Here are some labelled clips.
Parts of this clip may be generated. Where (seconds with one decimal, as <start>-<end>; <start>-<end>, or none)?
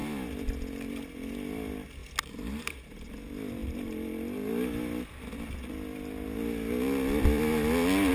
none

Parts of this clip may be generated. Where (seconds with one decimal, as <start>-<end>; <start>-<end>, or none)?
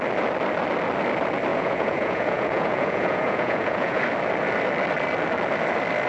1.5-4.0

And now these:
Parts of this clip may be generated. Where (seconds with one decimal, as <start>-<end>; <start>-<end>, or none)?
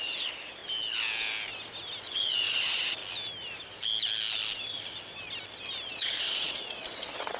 0.0-0.6; 2.0-3.0; 5.9-7.4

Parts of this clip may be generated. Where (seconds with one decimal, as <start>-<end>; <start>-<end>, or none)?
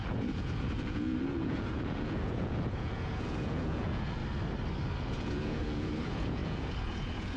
0.0-4.2; 5.0-7.4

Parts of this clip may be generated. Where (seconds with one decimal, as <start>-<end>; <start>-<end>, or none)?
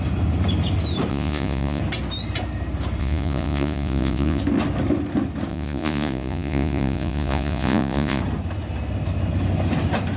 1.1-1.8; 3.0-4.4; 5.5-8.2